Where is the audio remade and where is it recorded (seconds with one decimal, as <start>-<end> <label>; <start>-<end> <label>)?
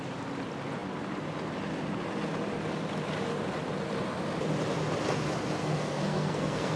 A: 0.0-5.6 recorded; 5.6-6.8 remade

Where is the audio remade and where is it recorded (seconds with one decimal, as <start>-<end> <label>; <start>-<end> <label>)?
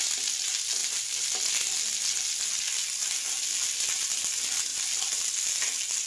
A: 0.0-6.1 recorded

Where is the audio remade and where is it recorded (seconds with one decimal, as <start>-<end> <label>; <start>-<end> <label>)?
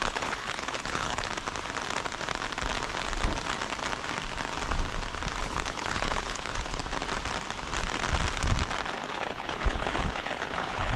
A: 0.0-1.3 remade; 1.3-5.4 recorded; 5.4-6.8 remade; 6.8-9.1 recorded; 9.1-11.0 remade